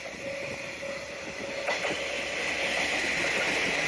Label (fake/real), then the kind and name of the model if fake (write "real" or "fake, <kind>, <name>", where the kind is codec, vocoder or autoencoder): real